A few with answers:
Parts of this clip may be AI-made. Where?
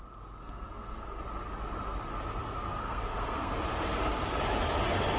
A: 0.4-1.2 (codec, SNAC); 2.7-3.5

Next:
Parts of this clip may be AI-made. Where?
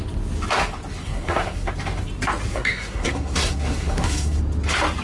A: 1.0-1.7 (codec, SNAC); 2.5-4.4